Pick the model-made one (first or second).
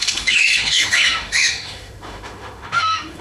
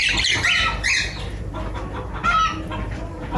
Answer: first